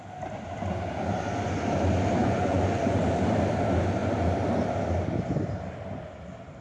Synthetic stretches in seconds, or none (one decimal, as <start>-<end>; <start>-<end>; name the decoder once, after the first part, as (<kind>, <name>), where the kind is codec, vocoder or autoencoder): 2.2-3.0 (vocoder, Vocos)